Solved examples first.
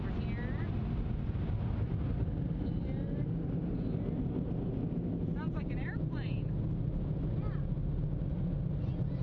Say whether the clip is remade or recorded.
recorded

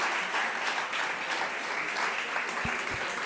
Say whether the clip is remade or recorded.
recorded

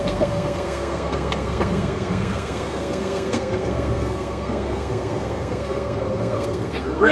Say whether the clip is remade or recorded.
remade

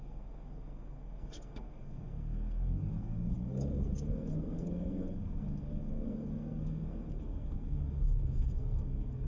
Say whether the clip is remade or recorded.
remade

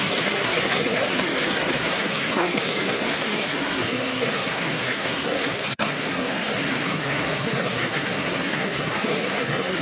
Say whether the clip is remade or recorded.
remade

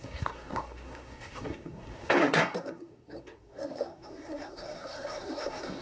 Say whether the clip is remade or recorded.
remade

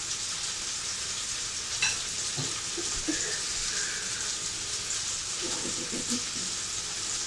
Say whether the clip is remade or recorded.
recorded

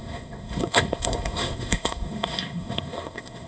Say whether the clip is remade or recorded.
remade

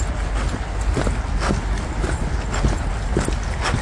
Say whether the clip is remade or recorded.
recorded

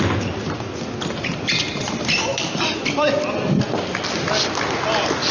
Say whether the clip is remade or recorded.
recorded